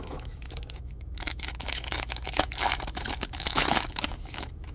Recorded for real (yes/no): no